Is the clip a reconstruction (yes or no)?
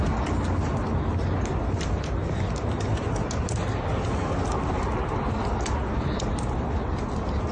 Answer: no